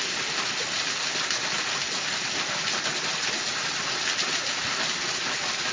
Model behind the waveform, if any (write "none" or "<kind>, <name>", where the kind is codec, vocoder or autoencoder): none